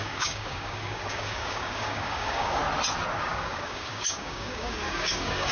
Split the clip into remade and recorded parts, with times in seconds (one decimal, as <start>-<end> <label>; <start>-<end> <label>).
0.0-2.6 remade; 2.6-3.2 recorded; 3.2-5.5 remade